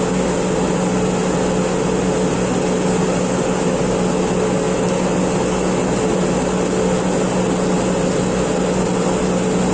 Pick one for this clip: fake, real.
real